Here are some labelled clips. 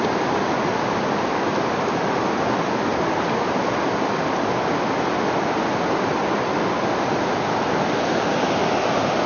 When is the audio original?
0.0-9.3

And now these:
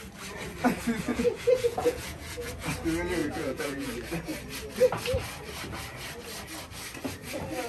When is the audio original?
0.0-1.1; 2.5-3.2; 3.9-7.7